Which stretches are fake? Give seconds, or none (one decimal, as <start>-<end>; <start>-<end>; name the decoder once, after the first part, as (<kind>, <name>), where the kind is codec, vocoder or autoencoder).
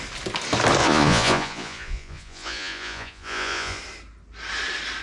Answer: 0.8-3.8 (vocoder, Vocos)